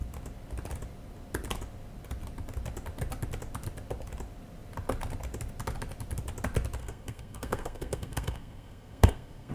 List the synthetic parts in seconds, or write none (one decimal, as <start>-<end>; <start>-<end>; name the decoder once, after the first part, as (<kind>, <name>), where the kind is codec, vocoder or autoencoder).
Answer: 6.8-9.5 (codec, SNAC)